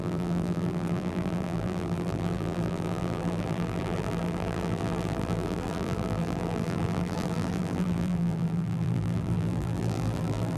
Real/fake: fake